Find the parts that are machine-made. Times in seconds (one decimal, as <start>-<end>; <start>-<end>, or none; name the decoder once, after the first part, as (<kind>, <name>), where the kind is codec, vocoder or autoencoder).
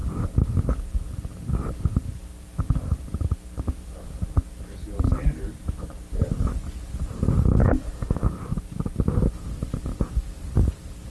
7.6-8.3 (autoencoder, DAC-VAE)